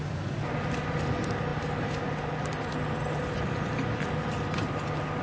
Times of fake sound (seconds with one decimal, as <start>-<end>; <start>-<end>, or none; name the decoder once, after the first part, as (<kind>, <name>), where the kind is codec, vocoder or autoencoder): none